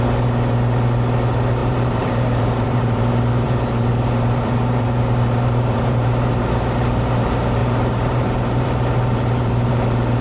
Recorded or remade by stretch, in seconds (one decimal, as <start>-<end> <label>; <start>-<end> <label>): 0.0-1.6 recorded; 1.6-6.5 remade; 6.5-7.6 recorded; 7.6-9.7 remade; 9.7-10.2 recorded